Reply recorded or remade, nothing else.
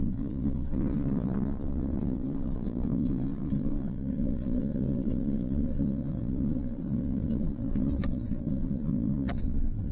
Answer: remade